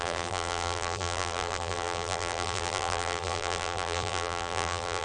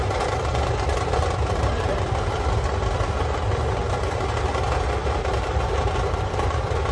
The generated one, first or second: first